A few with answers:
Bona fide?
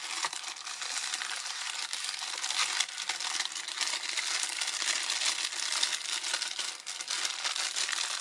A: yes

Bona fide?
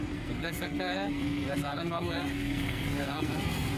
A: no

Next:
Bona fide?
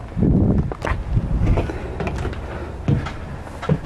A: yes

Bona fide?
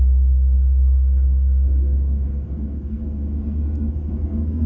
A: no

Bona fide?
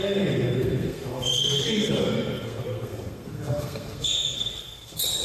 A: no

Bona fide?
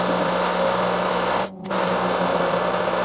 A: yes